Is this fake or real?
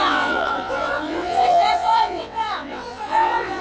fake